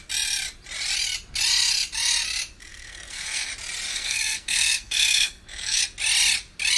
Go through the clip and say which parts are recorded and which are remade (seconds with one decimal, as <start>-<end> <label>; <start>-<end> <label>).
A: 0.0-2.7 recorded; 2.7-3.5 remade; 3.5-3.9 recorded; 3.9-5.8 remade; 5.8-6.8 recorded

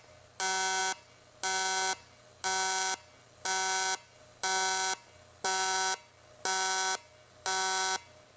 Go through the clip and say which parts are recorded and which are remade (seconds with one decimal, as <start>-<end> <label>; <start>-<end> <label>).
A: 0.0-8.4 recorded

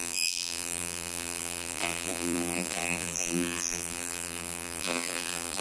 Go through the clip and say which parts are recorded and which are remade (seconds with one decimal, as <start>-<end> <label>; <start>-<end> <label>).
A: 0.0-5.6 remade

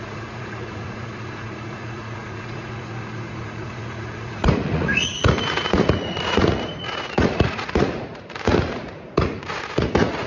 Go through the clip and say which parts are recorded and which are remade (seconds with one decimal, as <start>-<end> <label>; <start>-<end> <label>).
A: 0.0-10.3 remade